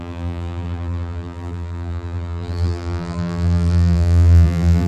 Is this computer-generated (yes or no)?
yes